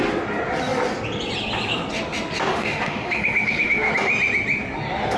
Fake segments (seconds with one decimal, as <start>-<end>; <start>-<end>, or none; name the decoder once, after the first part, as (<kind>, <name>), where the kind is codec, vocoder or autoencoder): 2.5-3.9 (autoencoder, DAC-VAE)